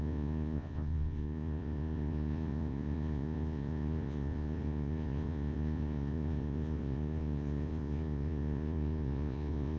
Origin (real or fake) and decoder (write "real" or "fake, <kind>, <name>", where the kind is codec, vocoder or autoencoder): fake, vocoder, Vocos